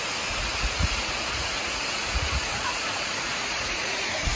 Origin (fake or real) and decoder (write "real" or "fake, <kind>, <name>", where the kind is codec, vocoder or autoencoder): fake, vocoder, Vocos